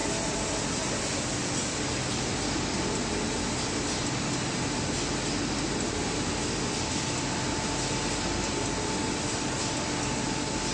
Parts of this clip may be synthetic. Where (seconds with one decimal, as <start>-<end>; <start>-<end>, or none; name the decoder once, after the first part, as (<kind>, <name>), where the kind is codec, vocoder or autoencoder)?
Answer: none